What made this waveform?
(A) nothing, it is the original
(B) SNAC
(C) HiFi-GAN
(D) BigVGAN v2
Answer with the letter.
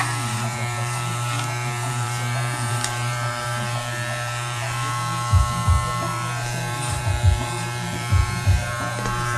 D